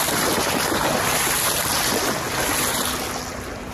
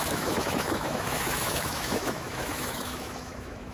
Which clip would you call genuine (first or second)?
first